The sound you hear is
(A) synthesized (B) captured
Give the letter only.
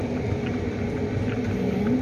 B